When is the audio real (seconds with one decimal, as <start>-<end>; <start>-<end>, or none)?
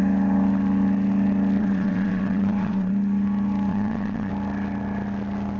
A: 0.0-1.6; 2.9-3.7; 4.3-5.6